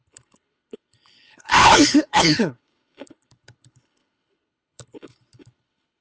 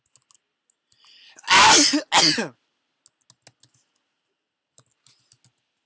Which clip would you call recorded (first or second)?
second